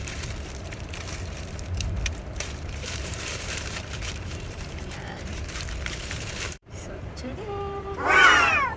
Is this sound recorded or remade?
remade